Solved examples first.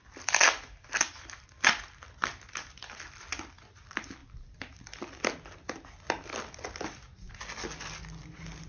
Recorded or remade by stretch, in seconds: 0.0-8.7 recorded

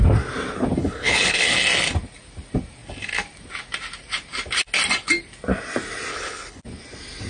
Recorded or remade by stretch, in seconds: 0.0-0.8 recorded; 0.8-1.5 remade; 1.5-6.1 recorded; 6.1-6.6 remade; 6.6-7.3 recorded

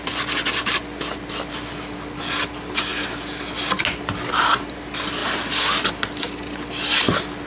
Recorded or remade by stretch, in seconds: 0.0-7.5 recorded

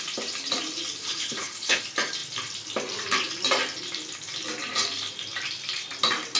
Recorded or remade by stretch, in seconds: 0.0-1.0 recorded; 1.0-1.8 remade; 1.8-6.4 recorded